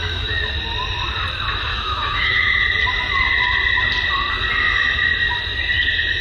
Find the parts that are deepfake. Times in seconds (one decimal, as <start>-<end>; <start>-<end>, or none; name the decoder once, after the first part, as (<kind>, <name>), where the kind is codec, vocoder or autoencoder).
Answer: 0.0-0.5 (autoencoder, DAC-VAE); 1.7-2.6